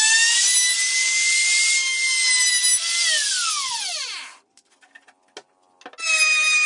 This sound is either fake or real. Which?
real